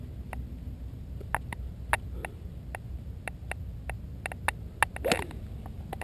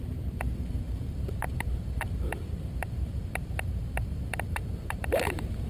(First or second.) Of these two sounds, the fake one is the second